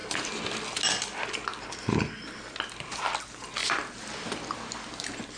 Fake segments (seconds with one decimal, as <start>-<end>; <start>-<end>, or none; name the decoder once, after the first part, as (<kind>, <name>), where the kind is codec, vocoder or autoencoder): none